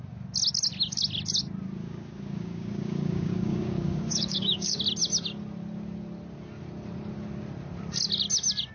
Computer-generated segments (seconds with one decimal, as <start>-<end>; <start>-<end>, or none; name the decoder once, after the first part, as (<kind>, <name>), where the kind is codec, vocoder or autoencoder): 1.8-4.8 (codec, DAC)